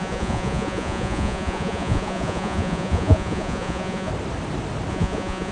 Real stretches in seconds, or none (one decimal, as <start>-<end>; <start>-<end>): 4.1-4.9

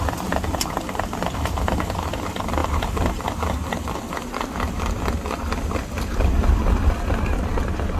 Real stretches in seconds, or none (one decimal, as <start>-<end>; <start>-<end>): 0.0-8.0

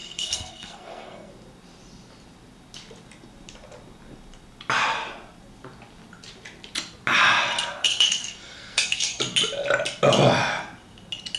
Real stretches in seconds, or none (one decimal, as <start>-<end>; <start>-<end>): 1.3-7.8; 9.2-11.4

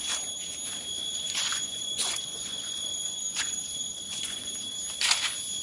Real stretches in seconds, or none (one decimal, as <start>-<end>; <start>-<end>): 0.0-1.1; 4.5-5.6